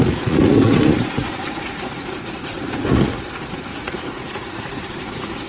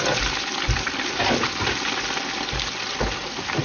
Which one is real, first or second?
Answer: second